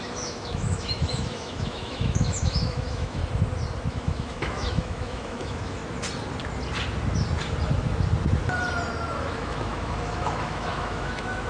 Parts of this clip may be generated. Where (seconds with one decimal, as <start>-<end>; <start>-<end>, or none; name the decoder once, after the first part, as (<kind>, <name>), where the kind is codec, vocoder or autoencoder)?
0.0-3.2 (autoencoder, DAC-VAE); 3.9-5.8; 9.2-11.5